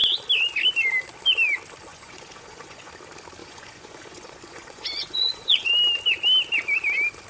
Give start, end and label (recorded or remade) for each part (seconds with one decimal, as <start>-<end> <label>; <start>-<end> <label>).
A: 0.0-1.9 recorded; 1.9-2.9 remade; 2.9-3.4 recorded; 3.4-5.7 remade; 5.7-7.3 recorded